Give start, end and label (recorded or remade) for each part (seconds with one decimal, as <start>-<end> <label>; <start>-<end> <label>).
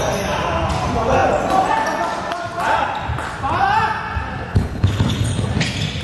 0.0-4.5 recorded; 4.5-5.5 remade; 5.5-6.0 recorded